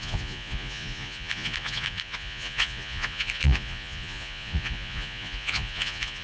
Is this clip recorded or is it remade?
remade